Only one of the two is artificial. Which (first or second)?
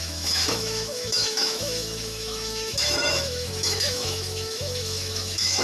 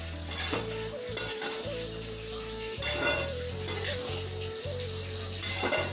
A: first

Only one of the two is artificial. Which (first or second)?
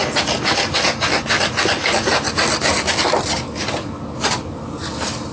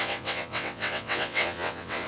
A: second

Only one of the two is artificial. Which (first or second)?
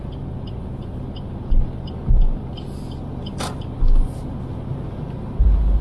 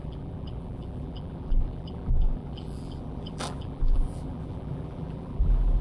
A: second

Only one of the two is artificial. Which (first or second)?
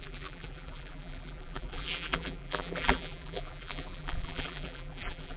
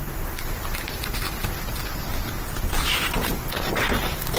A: first